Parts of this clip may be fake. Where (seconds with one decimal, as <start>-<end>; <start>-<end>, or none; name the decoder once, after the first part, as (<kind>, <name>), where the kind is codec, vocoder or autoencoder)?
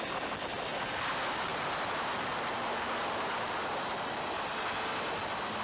none